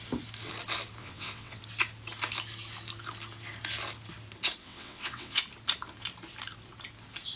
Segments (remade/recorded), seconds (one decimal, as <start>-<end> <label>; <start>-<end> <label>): 0.0-1.0 recorded; 1.0-1.6 remade; 1.6-4.6 recorded; 4.6-5.4 remade; 5.4-7.4 recorded